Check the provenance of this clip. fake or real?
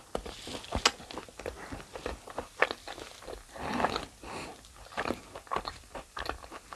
real